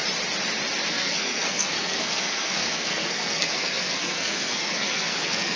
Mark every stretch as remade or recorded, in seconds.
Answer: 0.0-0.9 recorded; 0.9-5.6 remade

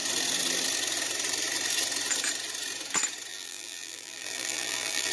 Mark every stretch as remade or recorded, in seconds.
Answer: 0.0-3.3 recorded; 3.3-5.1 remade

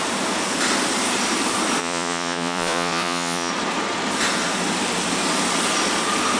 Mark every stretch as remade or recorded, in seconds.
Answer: 0.0-1.8 recorded; 1.8-3.5 remade; 3.5-6.4 recorded

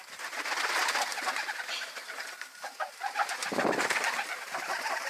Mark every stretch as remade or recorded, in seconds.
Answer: 0.0-5.1 recorded

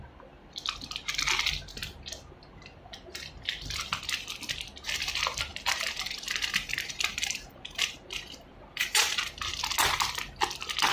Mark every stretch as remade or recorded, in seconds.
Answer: 0.0-5.5 recorded; 5.5-9.6 remade; 9.6-10.9 recorded

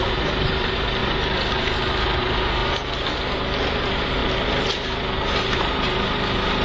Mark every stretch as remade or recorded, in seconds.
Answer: 0.0-1.0 remade; 1.0-1.5 recorded; 1.5-2.6 remade; 2.6-3.7 recorded; 3.7-4.2 remade; 4.2-5.1 recorded; 5.1-6.6 remade

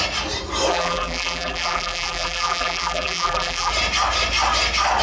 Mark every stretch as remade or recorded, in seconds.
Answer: 0.0-0.7 recorded; 0.7-3.7 remade; 3.7-5.0 recorded

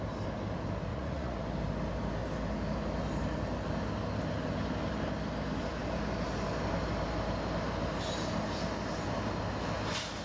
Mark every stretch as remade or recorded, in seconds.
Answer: 0.0-0.9 recorded; 0.9-1.4 remade; 1.4-10.2 recorded